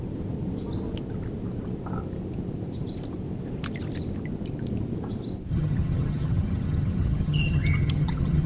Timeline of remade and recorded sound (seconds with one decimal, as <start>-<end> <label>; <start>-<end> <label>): 0.0-5.5 recorded; 5.5-8.5 remade